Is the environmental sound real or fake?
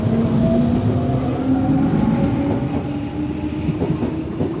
real